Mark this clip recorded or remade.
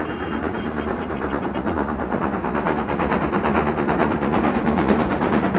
remade